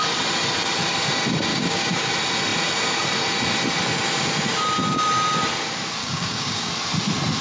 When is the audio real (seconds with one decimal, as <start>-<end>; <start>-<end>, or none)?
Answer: 0.0-1.5; 2.1-6.0; 6.7-7.4